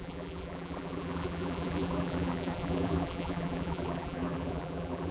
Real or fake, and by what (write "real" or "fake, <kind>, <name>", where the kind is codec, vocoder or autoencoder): fake, vocoder, BigVGAN v2